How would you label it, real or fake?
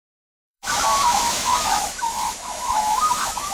fake